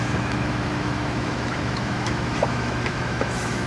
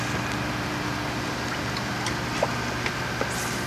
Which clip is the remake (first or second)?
first